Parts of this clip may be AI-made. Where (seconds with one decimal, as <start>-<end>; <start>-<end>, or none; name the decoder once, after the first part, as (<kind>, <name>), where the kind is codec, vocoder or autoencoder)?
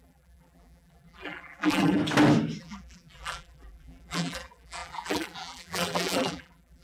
0.0-2.0 (vocoder, BigVGAN v2); 2.6-6.8